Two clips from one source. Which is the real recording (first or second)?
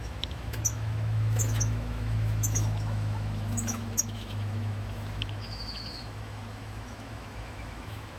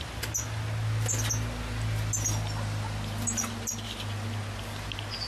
second